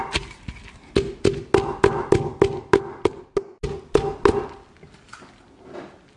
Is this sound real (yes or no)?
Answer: yes